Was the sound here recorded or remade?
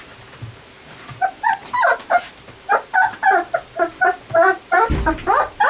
recorded